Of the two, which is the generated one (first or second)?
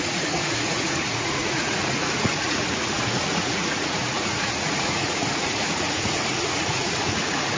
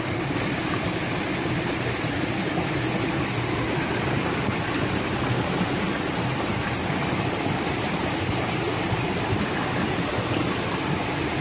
first